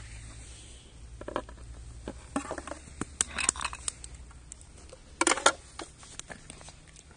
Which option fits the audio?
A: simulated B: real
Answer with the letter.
B